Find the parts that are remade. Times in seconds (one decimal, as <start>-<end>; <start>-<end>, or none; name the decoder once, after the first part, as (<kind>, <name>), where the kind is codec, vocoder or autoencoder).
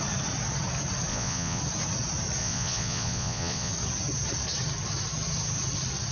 1.1-1.6 (vocoder, Vocos); 2.4-3.7